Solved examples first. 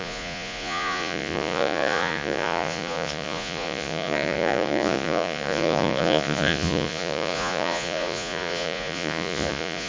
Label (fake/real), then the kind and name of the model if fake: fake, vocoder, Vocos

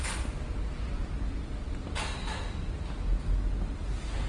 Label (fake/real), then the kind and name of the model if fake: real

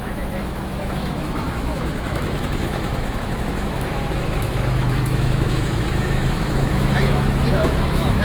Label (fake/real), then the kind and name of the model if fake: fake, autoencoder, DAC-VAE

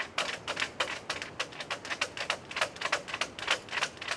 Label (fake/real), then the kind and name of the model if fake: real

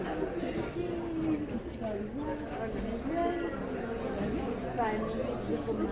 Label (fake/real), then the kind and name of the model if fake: real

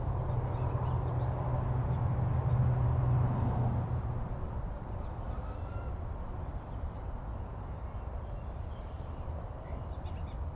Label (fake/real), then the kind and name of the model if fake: real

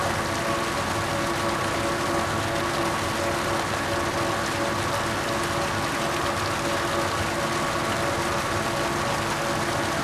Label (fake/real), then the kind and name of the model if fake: real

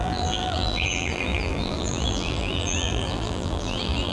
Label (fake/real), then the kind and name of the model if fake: fake, vocoder, BigVGAN v2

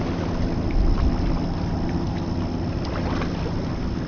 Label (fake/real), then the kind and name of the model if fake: real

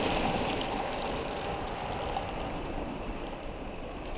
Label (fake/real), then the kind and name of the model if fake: real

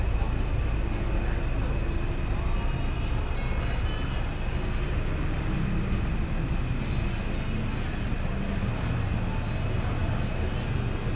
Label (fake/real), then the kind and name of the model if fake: real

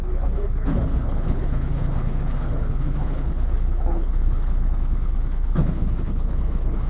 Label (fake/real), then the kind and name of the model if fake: fake, codec, HILCodec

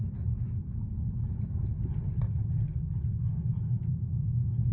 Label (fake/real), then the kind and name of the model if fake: real